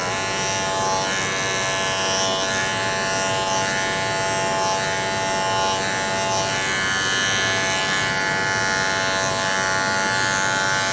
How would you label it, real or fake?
real